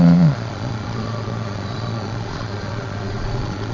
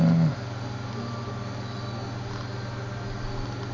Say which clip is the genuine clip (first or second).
second